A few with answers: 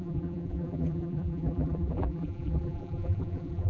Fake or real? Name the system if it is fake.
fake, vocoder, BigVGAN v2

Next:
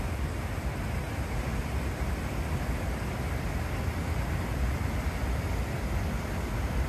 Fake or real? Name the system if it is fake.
real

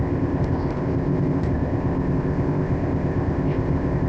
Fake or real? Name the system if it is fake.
fake, codec, ZipCodec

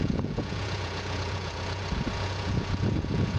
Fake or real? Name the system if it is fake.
fake, vocoder, Vocos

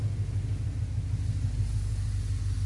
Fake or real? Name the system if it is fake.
real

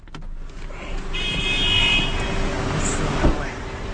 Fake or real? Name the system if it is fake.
real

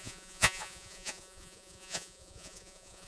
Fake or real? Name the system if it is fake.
fake, vocoder, Vocos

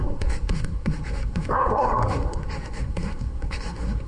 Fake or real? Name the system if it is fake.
fake, codec, SNAC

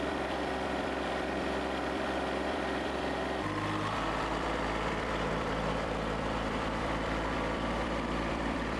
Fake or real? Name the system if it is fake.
fake, vocoder, BigVGAN v2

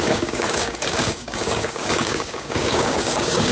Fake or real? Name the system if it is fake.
fake, codec, DAC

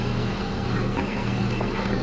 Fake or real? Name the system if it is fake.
fake, codec, SNAC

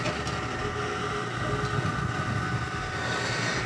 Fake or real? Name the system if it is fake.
real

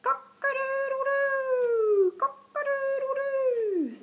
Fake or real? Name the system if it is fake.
real